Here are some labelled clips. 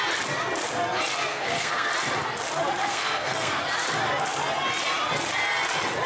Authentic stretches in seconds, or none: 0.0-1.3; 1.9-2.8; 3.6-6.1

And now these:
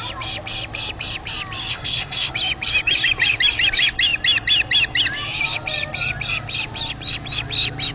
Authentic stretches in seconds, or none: 0.0-1.7; 2.3-7.9

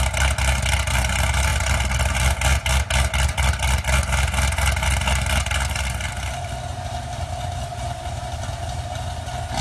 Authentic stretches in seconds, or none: 0.0-9.6

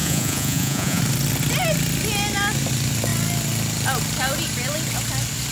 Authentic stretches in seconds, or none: 1.0-5.5

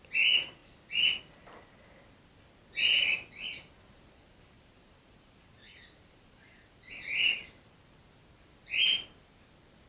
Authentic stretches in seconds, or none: 0.0-3.1; 7.4-9.9

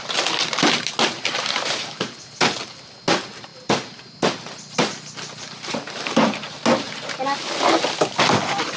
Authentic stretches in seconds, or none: 0.0-8.8

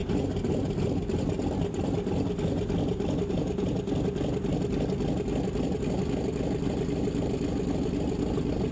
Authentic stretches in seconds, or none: 0.0-8.7